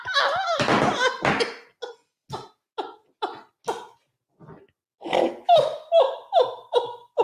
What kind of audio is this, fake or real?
real